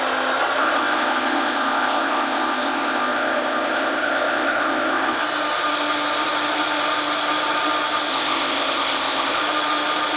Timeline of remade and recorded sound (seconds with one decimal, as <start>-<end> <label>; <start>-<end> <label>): 0.0-0.6 recorded; 0.6-5.2 remade; 5.2-8.1 recorded; 8.1-9.4 remade; 9.4-10.2 recorded